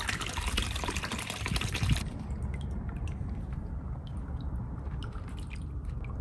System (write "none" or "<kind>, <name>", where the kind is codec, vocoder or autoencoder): vocoder, BigVGAN v2